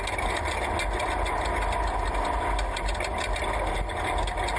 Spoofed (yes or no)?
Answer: no